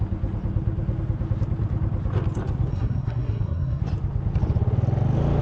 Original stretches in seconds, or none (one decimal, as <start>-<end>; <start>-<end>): 0.0-2.7; 3.8-5.4